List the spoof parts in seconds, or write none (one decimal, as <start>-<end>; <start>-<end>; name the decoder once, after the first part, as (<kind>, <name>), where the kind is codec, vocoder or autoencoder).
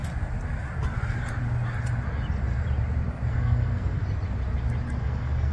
3.3-4.0 (codec, SNAC); 5.0-5.5